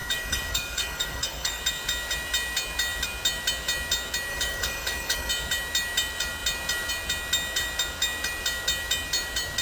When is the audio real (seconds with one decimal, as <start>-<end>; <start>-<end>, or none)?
1.6-4.3; 5.3-9.6